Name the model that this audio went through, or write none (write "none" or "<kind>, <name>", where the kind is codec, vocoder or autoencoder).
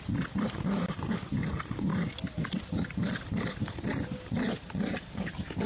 none